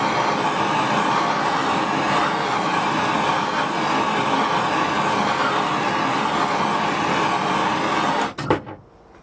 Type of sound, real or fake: real